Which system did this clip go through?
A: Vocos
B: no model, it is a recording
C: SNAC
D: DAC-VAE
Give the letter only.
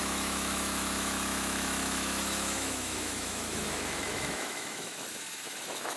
D